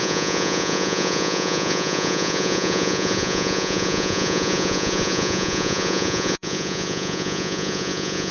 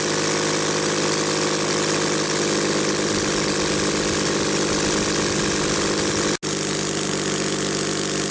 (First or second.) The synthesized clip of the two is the first